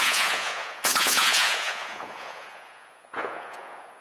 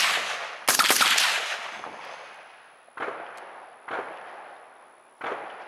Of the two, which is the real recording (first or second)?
second